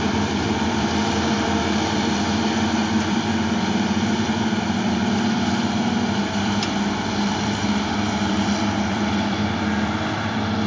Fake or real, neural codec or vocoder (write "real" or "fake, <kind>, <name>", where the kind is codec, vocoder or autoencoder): fake, vocoder, BigVGAN v2